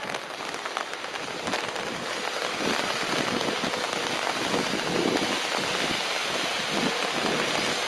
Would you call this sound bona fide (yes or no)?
yes